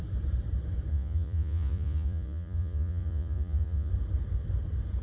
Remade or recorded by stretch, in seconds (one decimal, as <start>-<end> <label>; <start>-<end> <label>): 0.0-0.9 recorded; 0.9-3.9 remade; 3.9-5.0 recorded